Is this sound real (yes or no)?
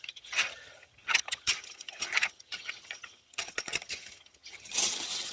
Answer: no